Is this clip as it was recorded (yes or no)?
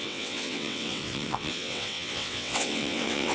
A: no